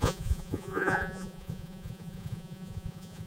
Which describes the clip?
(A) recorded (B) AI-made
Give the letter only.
B